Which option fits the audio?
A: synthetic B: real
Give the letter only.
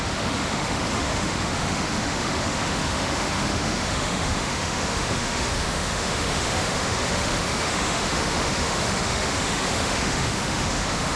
A